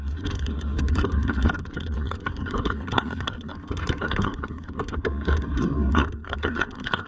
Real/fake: fake